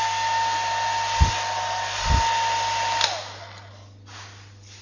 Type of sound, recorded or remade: recorded